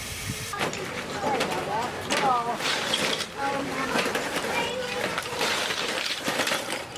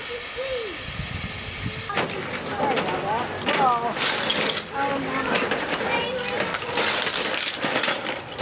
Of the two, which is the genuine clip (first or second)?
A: second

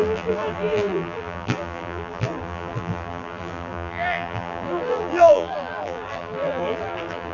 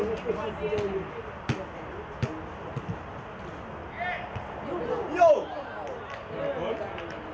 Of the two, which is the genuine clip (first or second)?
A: second